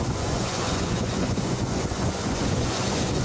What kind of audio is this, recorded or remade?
remade